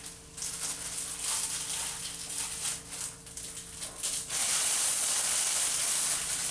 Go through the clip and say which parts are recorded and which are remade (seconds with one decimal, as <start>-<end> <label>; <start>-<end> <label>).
0.0-4.4 recorded; 4.4-5.1 remade; 5.1-6.5 recorded